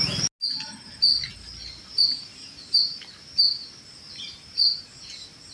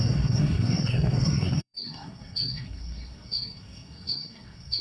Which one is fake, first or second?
second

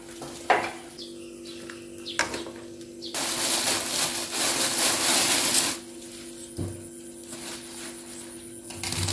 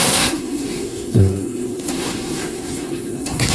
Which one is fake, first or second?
second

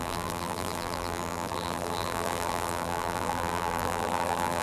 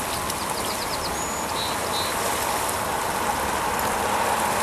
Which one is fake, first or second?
first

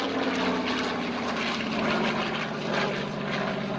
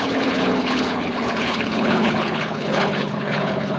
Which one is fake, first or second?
second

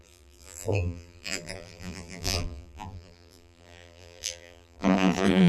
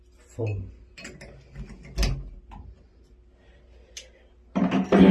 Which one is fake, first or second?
first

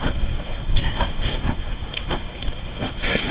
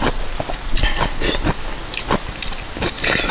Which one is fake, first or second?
first